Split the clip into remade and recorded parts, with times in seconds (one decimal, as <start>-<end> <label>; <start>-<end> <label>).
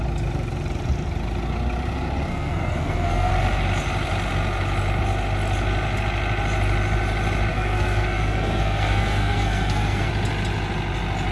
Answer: 0.0-2.3 recorded; 2.3-3.3 remade; 3.3-7.5 recorded; 7.5-10.1 remade; 10.1-11.3 recorded